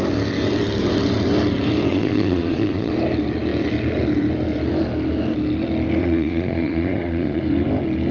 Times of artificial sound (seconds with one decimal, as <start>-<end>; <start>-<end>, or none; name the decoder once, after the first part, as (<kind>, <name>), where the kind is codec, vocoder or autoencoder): 1.9-2.9 (vocoder, Vocos); 6.0-7.4